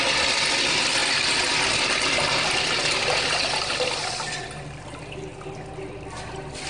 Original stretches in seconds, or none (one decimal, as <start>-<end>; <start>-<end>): 0.0-6.7